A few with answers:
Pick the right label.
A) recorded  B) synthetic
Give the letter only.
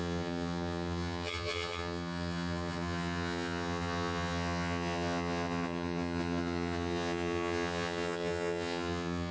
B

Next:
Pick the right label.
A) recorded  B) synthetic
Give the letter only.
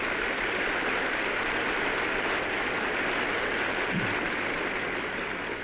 A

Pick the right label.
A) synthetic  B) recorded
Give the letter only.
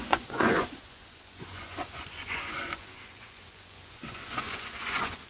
A